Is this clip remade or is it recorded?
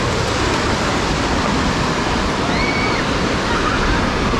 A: recorded